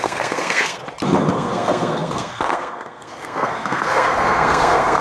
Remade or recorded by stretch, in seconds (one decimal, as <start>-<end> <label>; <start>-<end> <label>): 0.0-0.8 remade; 0.8-1.3 recorded; 1.3-5.0 remade